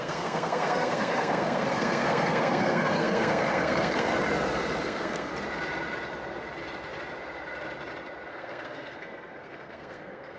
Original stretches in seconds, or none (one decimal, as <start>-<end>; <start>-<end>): 4.1-4.8; 5.3-8.3